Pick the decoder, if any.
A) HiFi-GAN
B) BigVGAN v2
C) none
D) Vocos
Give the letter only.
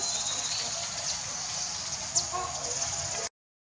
C